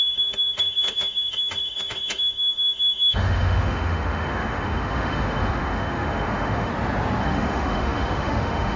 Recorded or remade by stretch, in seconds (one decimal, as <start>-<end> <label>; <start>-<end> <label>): 0.0-6.7 remade; 6.7-7.2 recorded; 7.2-8.8 remade